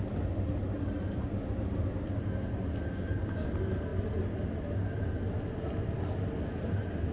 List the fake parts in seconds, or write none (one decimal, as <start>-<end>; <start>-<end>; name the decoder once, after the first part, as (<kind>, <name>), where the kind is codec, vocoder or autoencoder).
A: none